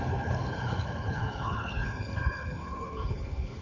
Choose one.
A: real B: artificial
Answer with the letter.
B